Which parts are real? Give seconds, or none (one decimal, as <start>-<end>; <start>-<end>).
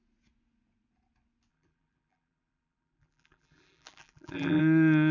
0.0-1.5; 4.6-5.1